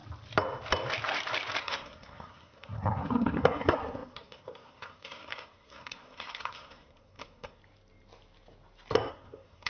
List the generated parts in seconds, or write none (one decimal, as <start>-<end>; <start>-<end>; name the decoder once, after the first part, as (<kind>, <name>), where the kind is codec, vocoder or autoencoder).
1.6-7.6 (codec, SNAC); 9.1-9.7